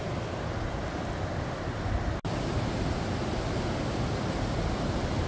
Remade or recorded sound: recorded